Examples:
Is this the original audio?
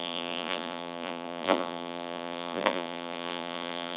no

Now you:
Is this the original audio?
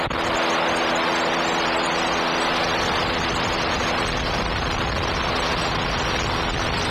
yes